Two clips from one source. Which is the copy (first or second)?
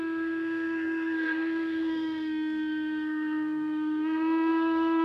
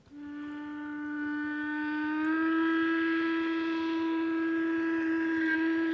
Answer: first